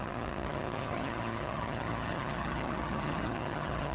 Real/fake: fake